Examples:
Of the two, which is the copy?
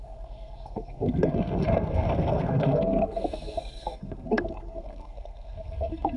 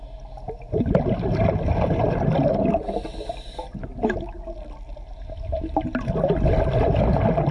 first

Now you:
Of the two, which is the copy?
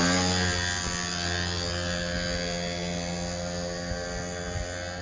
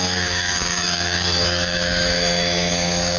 second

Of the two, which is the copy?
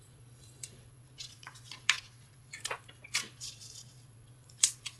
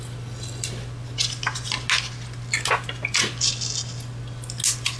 first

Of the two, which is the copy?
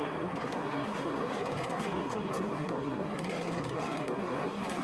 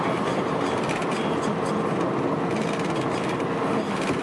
first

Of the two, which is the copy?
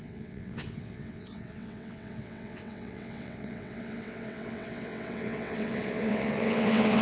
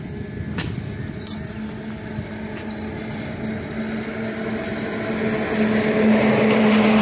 first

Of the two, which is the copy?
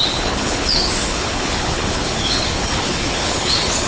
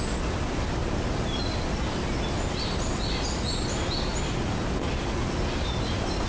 first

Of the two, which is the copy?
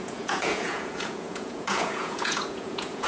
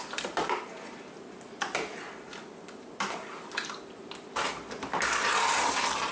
first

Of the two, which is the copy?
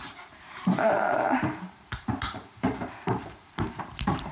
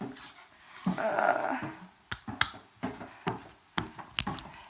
first